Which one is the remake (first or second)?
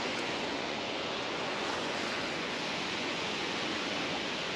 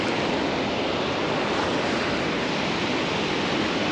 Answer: first